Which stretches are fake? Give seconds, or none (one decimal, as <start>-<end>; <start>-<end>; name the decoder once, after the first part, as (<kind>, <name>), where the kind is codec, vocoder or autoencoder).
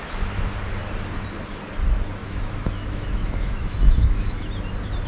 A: 2.2-4.4 (autoencoder, DAC-VAE)